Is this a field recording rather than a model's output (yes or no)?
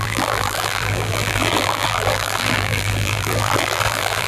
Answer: no